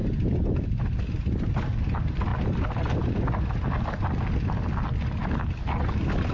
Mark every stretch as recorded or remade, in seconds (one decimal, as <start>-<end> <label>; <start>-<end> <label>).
0.0-6.3 recorded